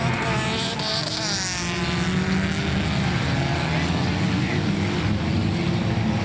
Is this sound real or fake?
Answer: real